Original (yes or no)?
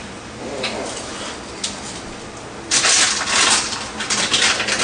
yes